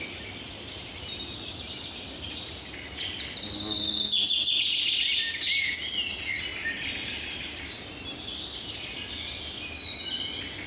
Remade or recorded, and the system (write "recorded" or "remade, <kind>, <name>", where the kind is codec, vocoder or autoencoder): recorded